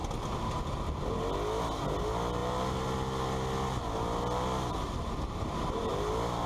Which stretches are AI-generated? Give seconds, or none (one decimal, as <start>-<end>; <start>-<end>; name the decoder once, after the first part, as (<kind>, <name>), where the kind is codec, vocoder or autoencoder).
none

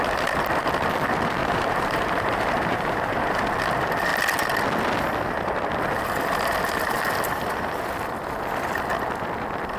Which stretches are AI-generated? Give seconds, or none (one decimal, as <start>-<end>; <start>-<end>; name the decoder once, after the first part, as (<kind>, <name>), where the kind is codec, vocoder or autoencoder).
1.4-3.3 (vocoder, BigVGAN v2)

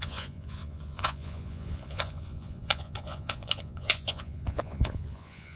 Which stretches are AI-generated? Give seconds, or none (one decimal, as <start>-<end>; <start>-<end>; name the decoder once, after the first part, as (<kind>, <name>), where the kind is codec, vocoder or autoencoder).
0.0-5.6 (vocoder, Vocos)

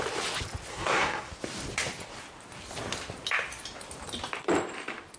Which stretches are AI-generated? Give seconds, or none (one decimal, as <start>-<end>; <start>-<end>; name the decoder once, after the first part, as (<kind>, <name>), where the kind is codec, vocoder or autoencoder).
0.7-1.3 (codec, SNAC)